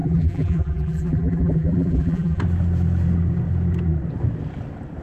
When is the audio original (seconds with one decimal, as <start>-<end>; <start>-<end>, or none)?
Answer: 2.4-5.0